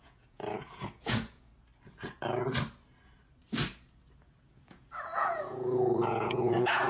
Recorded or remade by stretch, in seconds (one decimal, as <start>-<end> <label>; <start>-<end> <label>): 0.0-1.5 remade; 1.5-4.5 recorded; 4.5-6.9 remade